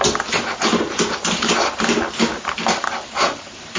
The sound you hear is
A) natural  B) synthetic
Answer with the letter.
A